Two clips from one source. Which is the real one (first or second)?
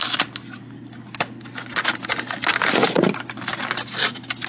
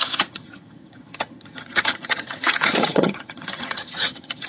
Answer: first